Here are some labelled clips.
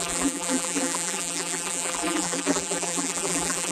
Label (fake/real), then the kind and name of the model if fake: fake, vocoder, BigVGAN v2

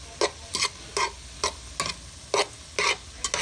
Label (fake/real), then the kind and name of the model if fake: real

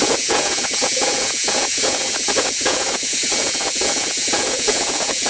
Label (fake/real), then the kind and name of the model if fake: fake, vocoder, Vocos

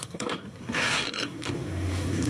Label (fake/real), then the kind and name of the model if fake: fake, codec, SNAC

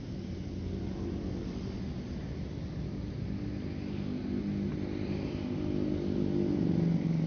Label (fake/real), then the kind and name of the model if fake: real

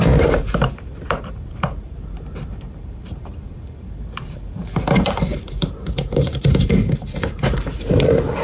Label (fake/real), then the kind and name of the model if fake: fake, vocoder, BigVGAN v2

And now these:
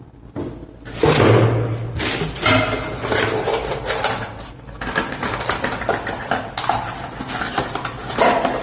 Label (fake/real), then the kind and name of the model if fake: real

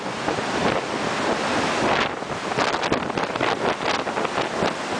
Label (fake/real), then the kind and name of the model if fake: real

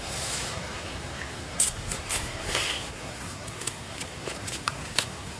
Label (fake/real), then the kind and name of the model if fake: fake, codec, SNAC